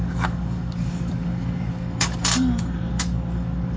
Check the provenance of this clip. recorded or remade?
remade